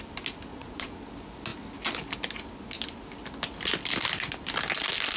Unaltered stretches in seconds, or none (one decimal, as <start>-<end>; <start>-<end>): 0.0-0.5; 1.0-5.2